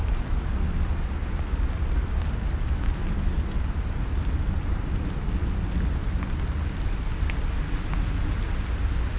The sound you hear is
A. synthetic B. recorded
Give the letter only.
B